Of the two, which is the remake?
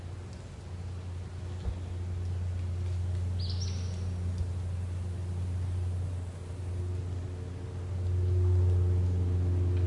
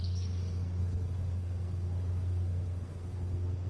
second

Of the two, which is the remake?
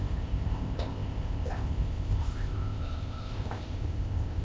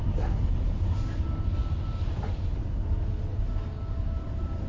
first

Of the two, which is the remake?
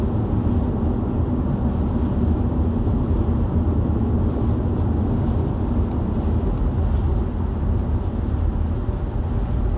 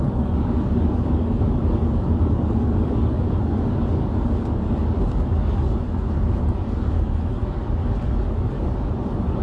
second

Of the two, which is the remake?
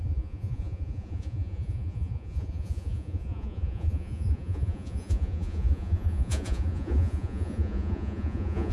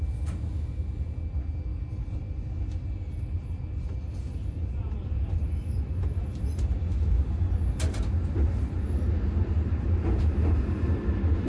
first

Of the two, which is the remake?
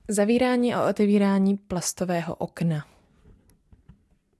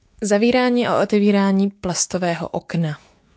second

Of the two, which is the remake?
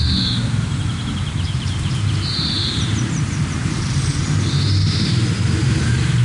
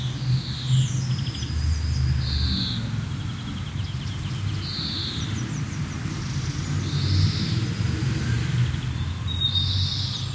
first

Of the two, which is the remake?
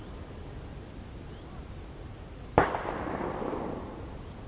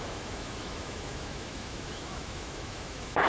second